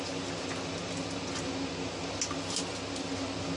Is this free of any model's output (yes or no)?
yes